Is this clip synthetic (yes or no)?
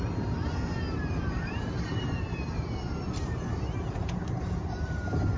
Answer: yes